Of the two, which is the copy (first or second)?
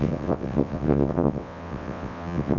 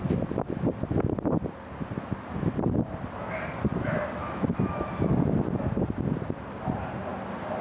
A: first